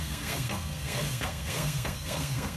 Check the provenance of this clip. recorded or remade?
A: remade